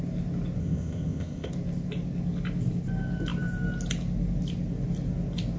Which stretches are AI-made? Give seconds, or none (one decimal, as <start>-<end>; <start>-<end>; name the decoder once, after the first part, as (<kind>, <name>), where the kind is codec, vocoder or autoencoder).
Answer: 0.6-1.5 (codec, ZipCodec)